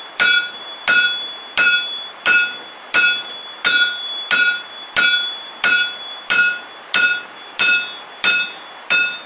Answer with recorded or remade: remade